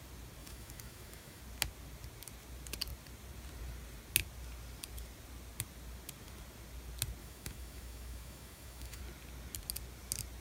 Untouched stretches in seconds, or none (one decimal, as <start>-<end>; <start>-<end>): 0.0-0.4; 1.4-7.2; 9.0-10.4